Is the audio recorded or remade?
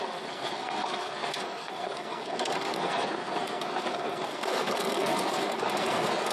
remade